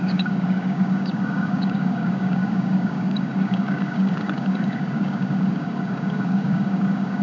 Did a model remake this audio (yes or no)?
yes